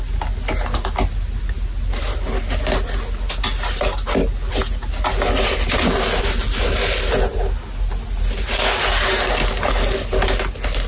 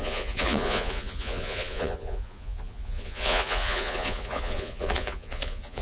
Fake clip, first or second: second